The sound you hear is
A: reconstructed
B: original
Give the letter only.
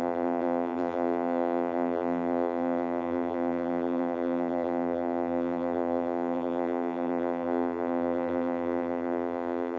A